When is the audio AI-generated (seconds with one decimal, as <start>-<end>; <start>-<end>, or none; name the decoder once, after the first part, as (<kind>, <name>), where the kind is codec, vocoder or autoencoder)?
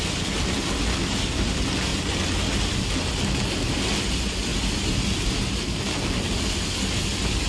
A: none